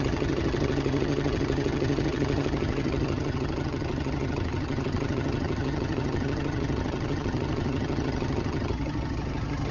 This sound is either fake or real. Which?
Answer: fake